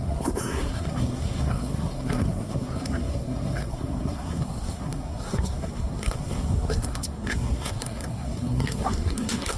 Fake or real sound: fake